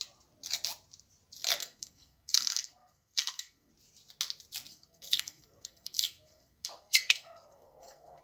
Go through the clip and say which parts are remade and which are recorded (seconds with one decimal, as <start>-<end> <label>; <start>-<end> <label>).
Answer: 0.0-1.6 recorded; 1.6-3.7 remade; 3.7-4.7 recorded; 4.7-8.2 remade